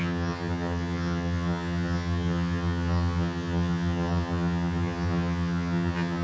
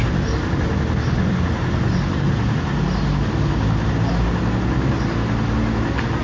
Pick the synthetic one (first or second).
first